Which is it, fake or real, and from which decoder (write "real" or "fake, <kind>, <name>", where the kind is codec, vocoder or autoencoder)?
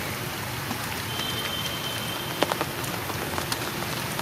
real